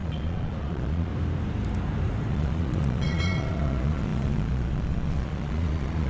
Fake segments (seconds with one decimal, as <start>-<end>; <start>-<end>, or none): 0.0-1.1; 2.3-6.1